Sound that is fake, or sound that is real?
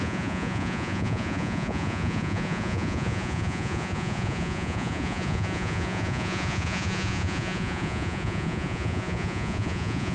fake